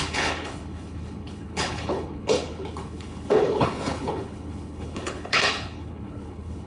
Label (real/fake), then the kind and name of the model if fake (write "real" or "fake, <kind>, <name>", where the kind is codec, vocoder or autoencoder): fake, codec, HILCodec